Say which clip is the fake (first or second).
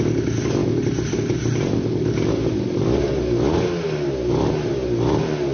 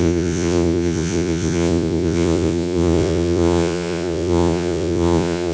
second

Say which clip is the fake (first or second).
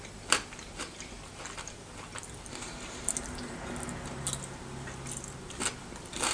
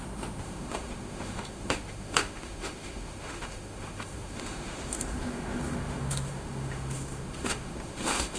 second